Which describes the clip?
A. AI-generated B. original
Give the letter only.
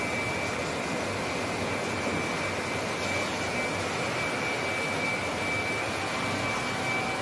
B